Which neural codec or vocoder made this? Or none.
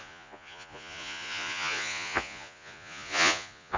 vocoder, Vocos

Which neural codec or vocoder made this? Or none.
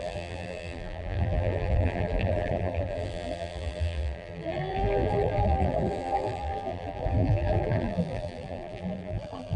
vocoder, BigVGAN v2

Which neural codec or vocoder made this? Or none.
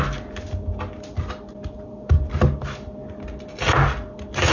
none